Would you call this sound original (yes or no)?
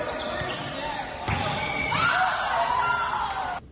yes